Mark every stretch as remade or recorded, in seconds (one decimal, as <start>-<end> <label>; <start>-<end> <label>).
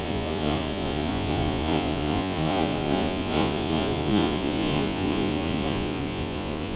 0.0-6.8 remade